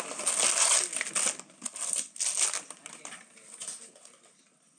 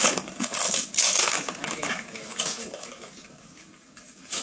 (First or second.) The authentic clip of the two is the first